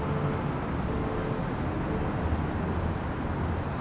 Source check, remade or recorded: recorded